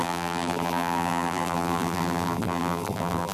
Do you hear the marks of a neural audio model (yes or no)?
yes